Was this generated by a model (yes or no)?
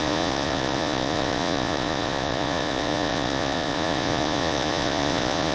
yes